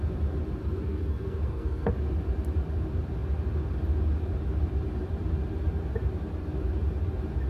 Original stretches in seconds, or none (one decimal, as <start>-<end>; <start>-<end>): 0.0-0.6; 1.9-7.5